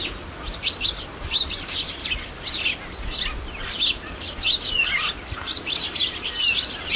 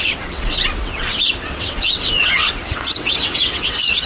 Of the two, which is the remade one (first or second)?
second